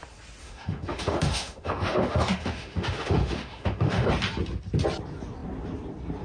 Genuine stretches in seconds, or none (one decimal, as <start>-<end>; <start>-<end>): 0.0-0.4; 4.1-6.2